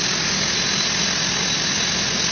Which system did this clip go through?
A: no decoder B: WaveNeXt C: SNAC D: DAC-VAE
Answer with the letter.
A